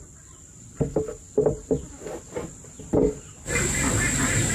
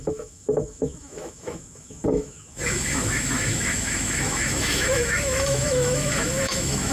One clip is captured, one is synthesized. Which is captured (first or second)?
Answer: first